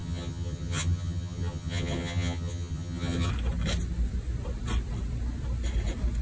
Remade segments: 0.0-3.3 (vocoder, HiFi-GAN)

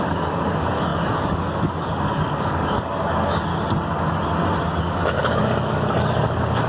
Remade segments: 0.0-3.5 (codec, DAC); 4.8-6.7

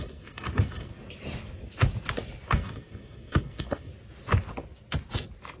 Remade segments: 0.0-0.9 (codec, SNAC); 2.5-3.9

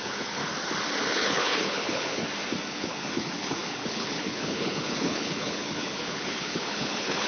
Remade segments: 0.0-0.4 (codec, HILCodec); 1.1-2.2; 2.7-7.3